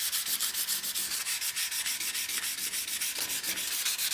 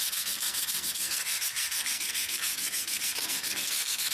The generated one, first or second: second